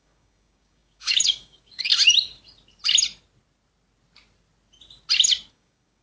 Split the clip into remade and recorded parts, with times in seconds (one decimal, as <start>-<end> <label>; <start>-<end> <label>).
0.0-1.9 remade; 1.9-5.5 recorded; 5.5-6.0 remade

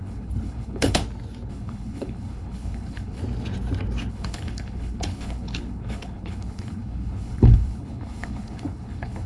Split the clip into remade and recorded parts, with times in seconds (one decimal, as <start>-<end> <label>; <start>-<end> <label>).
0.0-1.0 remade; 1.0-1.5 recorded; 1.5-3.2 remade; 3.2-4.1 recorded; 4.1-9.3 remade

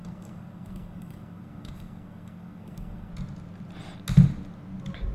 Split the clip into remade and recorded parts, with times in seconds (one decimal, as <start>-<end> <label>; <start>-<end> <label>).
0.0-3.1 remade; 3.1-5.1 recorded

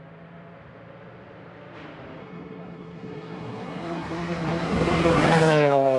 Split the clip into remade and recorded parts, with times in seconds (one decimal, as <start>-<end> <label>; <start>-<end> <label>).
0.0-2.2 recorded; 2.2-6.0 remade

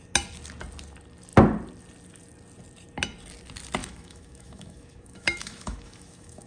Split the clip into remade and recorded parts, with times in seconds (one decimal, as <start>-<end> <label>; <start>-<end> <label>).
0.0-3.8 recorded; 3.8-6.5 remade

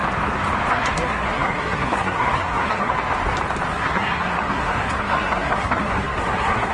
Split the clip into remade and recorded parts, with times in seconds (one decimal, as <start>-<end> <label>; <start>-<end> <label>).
0.0-0.7 recorded; 0.7-2.9 remade; 2.9-3.7 recorded; 3.7-6.7 remade

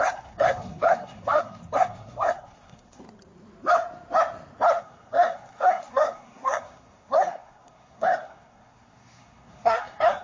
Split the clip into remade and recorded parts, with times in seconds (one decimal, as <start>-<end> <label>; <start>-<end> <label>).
0.0-3.0 remade; 3.0-4.8 recorded; 4.8-10.2 remade

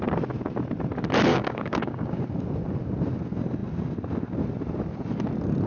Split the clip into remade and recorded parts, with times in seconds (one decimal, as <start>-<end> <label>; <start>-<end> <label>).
0.0-1.3 recorded; 1.3-2.2 remade; 2.2-5.7 recorded